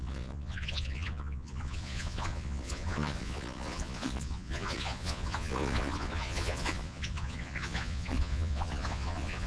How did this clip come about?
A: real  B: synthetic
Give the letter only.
B